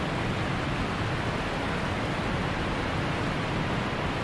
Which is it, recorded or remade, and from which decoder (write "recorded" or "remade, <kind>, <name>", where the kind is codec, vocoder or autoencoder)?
recorded